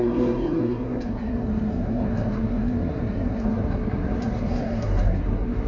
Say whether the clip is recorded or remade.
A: remade